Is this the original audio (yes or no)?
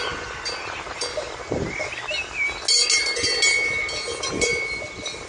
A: yes